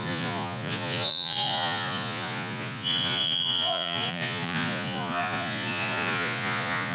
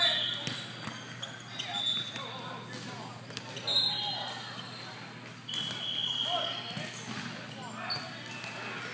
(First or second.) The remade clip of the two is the first